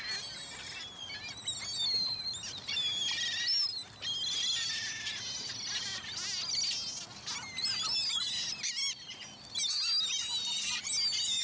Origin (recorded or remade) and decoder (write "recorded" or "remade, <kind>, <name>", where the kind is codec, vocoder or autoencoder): recorded